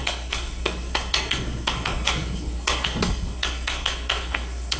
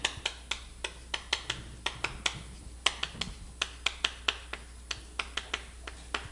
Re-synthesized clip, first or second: first